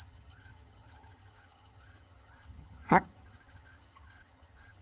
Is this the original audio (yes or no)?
no